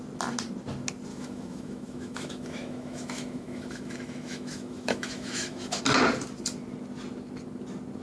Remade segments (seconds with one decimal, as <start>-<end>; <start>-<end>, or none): 1.1-5.8